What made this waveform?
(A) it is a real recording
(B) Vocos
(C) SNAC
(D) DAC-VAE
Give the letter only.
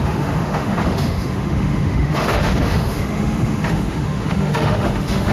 D